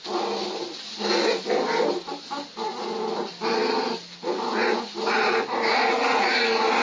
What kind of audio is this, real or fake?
real